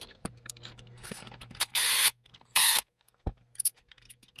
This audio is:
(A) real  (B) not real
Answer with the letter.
B